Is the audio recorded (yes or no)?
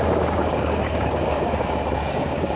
no